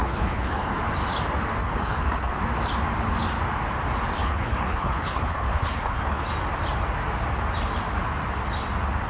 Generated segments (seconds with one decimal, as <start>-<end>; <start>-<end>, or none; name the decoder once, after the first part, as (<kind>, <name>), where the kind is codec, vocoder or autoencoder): 0.0-0.8 (codec, HILCodec); 1.6-2.4; 4.2-6.3